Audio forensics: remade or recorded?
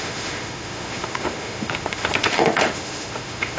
remade